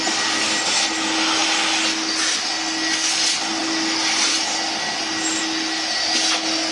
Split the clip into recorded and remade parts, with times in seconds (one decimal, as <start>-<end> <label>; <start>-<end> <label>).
0.0-6.7 recorded